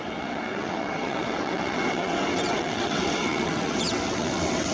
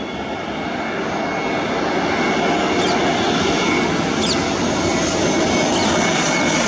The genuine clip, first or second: second